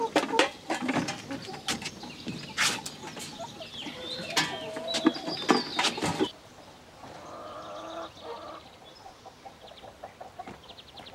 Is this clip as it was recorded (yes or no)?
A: yes